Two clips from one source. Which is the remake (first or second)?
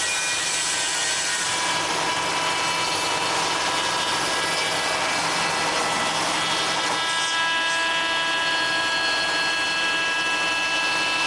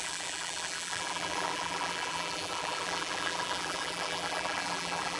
second